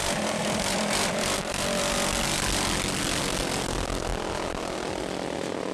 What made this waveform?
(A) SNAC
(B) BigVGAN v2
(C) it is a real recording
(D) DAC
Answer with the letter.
C